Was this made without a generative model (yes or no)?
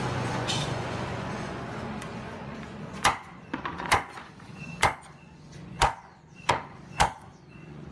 no